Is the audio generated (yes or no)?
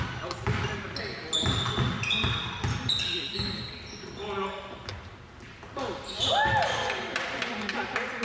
no